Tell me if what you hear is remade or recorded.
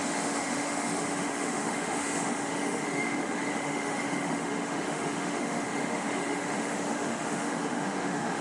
remade